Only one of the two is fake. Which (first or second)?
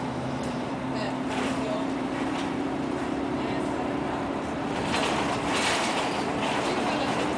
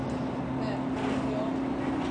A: first